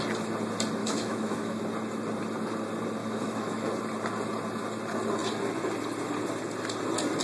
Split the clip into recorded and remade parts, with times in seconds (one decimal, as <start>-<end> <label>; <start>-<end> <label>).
0.0-0.8 recorded; 0.8-1.6 remade; 1.6-3.0 recorded; 3.0-3.7 remade; 3.7-7.2 recorded